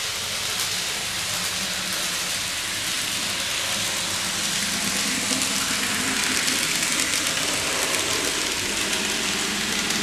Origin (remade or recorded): recorded